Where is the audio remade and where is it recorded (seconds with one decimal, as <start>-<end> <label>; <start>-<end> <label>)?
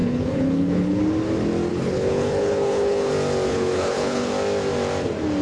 0.0-1.0 remade; 1.0-1.7 recorded; 1.7-3.1 remade; 3.1-3.5 recorded; 3.5-4.3 remade; 4.3-5.4 recorded